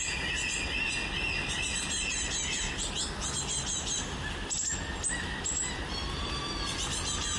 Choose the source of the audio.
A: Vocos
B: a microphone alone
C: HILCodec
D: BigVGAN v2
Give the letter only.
B